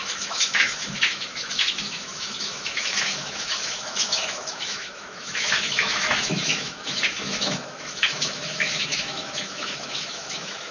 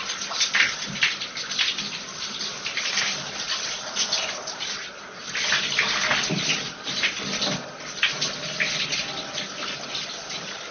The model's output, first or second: first